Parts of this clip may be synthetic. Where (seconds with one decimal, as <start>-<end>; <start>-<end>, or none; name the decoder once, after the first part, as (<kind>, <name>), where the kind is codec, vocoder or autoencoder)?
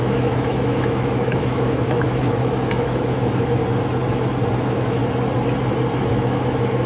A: 0.0-3.6 (autoencoder, DAC-VAE); 4.6-5.0; 6.0-6.9